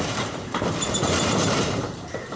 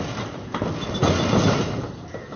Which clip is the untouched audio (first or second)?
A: second